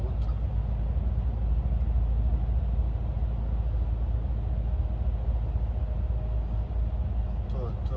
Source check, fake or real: real